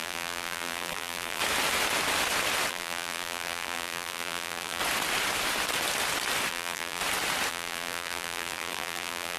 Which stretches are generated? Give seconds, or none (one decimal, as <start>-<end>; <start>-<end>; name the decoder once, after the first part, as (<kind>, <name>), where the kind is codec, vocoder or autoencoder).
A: 0.0-1.4 (vocoder, BigVGAN v2); 2.7-4.8; 6.5-7.0; 7.5-9.4